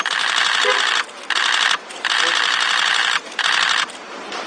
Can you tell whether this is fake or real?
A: real